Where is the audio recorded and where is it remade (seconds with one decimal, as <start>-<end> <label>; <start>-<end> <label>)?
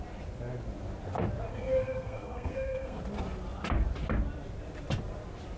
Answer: 0.0-1.5 recorded; 1.5-3.0 remade; 3.0-5.6 recorded